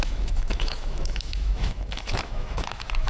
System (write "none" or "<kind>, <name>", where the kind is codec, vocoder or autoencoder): autoencoder, DAC-VAE